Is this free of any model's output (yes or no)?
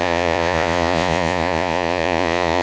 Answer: no